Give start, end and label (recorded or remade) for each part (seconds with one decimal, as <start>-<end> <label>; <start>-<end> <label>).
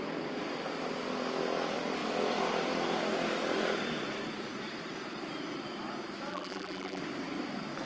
0.0-6.3 recorded; 6.3-7.0 remade; 7.0-7.9 recorded